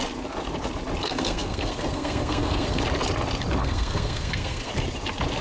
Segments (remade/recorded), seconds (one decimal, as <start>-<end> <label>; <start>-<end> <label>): 0.0-1.0 recorded; 1.0-2.8 remade; 2.8-3.6 recorded; 3.6-4.7 remade; 4.7-5.4 recorded